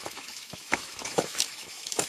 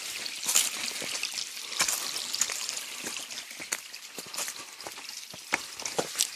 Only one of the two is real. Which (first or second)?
second